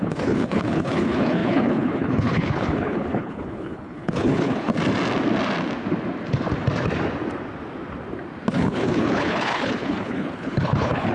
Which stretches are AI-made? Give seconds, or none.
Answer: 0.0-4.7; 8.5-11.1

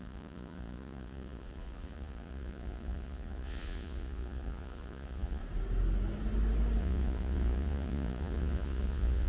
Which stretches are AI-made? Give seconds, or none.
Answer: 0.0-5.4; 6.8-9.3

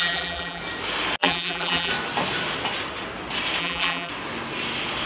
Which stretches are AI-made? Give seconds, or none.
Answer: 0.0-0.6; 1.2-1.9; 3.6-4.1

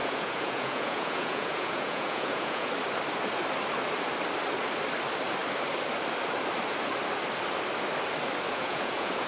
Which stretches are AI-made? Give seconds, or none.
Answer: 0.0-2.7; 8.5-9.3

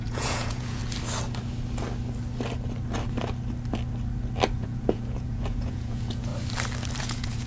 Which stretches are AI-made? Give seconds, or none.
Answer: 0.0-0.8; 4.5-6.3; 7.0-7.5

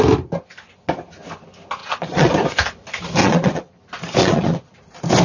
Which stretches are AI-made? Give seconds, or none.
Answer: 1.8-2.3; 3.2-3.8; 4.2-4.7

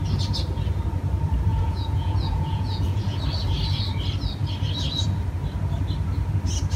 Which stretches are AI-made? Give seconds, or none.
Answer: 1.5-3.2